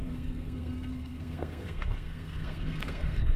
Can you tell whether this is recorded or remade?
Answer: remade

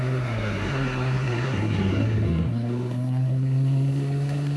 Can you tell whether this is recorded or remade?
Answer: remade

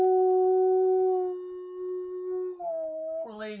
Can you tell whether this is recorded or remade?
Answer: recorded